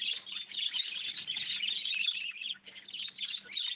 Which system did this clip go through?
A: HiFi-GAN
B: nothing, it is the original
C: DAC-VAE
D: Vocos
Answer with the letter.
B